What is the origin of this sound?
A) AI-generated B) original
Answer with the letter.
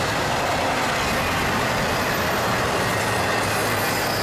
B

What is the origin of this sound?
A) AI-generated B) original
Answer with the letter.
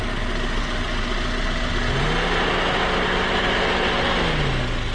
B